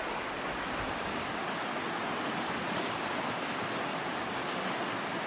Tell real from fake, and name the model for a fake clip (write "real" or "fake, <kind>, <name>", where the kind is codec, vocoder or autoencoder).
real